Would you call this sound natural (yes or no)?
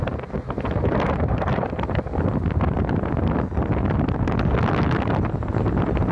yes